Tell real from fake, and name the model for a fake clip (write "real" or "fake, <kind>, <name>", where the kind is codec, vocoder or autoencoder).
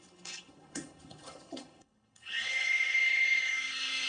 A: fake, codec, HILCodec